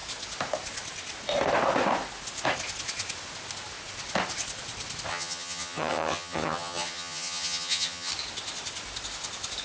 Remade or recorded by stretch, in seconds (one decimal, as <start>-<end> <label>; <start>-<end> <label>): 0.0-5.1 recorded; 5.1-8.1 remade; 8.1-9.6 recorded